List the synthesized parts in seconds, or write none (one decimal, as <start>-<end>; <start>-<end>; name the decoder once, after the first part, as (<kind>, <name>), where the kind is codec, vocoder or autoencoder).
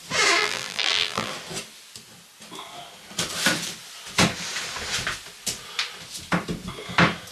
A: 0.4-1.3 (vocoder, BigVGAN v2)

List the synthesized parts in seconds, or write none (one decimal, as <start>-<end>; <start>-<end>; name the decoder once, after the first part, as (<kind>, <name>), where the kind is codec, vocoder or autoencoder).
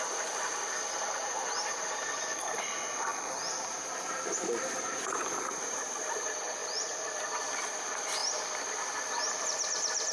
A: 0.0-3.1 (vocoder, BigVGAN v2); 4.7-6.6; 7.6-8.2; 9.4-10.1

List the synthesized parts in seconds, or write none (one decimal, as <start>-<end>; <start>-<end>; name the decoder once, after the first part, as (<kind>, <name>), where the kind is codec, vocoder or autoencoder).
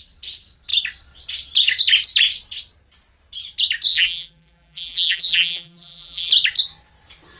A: 3.9-6.3 (vocoder, BigVGAN v2)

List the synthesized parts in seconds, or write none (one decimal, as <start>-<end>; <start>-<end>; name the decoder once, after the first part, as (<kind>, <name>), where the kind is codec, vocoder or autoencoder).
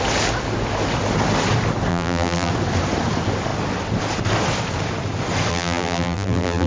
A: 1.9-2.5 (vocoder, BigVGAN v2); 5.5-6.7